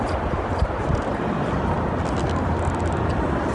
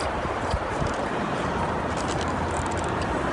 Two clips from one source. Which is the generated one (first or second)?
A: second